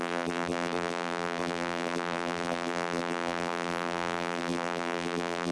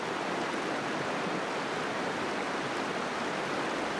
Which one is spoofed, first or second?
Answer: first